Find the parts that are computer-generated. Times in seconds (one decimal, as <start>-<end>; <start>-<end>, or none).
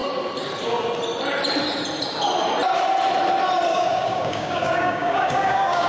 3.7-5.9